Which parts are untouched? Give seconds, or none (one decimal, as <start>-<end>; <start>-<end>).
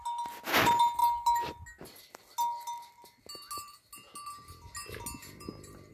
0.0-5.2